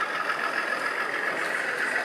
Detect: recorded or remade recorded